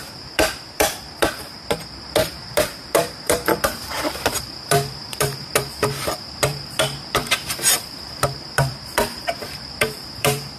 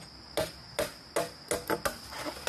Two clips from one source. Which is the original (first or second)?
second